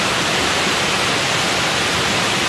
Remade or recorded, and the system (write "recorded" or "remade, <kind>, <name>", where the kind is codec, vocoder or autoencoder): recorded